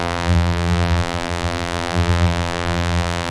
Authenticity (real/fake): fake